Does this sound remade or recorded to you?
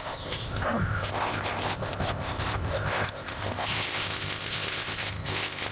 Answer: remade